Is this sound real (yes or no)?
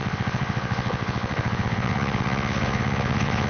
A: no